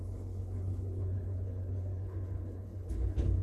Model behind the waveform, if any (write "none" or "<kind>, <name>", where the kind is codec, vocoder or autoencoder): codec, HILCodec